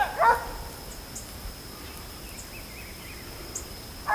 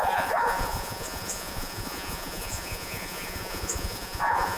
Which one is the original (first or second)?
first